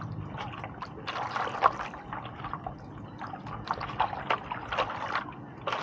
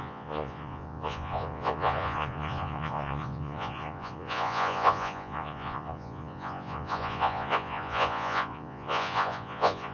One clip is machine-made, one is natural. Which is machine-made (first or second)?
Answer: second